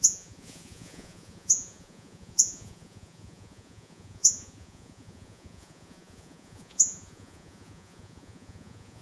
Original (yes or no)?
no